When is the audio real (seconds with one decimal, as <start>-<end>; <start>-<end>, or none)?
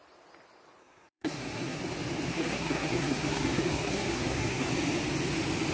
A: 0.0-0.8; 1.8-2.3; 4.7-5.7